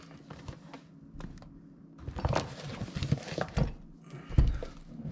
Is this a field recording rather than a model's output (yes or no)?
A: yes